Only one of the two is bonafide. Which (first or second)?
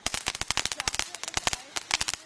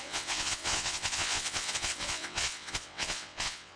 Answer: first